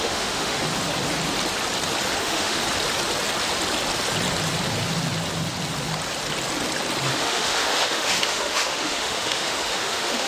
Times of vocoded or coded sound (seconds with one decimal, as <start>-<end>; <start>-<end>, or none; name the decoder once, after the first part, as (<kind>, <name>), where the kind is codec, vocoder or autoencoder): 0.0-0.6 (autoencoder, DAC-VAE); 2.2-2.6; 7.1-10.3